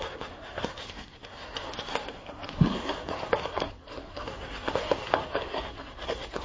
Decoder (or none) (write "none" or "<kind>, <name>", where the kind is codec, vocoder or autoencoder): codec, SNAC